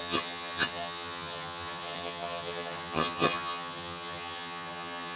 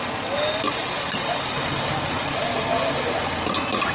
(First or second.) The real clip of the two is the second